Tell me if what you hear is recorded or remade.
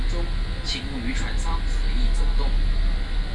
recorded